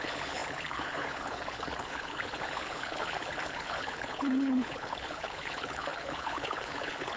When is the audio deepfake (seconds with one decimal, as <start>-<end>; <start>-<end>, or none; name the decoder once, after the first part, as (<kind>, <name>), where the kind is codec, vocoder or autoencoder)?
0.0-7.2 (codec, HILCodec)